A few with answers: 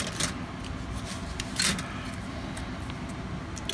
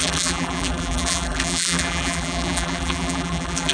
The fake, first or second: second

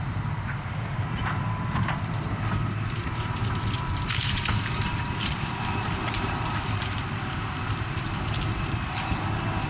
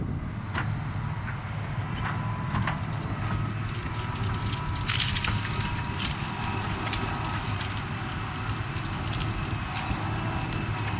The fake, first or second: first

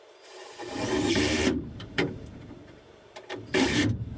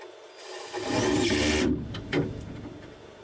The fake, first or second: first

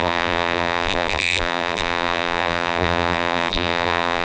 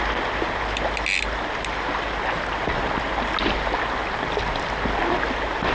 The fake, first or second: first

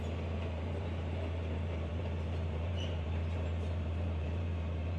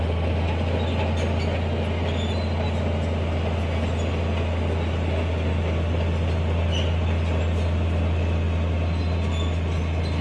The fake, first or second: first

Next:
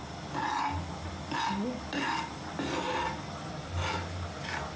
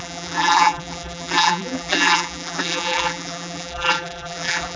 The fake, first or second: second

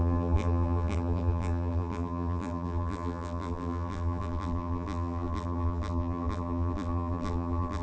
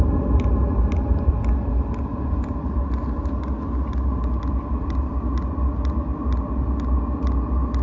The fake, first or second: first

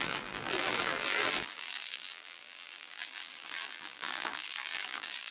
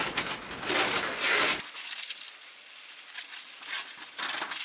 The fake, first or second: first